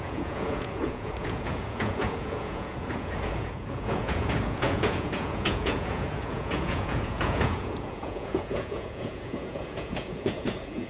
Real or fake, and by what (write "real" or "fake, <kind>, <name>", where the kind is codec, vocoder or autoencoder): fake, vocoder, Vocos